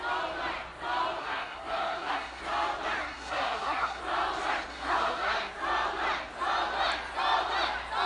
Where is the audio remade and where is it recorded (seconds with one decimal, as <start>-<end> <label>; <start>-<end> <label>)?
0.0-1.2 recorded; 1.2-2.4 remade; 2.4-3.0 recorded; 3.0-4.0 remade; 4.0-4.7 recorded; 4.7-5.5 remade; 5.5-8.1 recorded